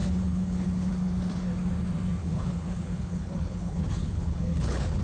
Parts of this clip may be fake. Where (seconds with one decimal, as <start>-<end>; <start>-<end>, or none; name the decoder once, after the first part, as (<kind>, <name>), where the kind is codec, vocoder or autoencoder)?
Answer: 0.0-0.9 (codec, HILCodec); 2.2-5.0